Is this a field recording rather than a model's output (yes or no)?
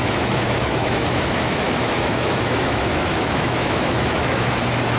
no